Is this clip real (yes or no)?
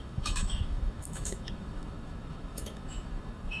no